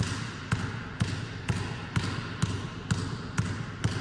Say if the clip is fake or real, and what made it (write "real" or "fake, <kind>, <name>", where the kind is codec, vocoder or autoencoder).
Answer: real